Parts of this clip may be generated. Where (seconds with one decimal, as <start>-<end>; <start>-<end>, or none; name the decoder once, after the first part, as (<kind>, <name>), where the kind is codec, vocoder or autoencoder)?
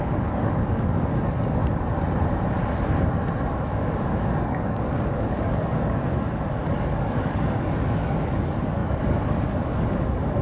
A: 0.0-1.6 (codec, DAC); 3.5-10.4